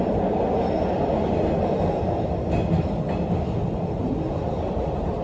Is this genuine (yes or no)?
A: yes